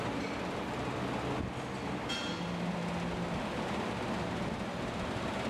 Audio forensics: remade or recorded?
recorded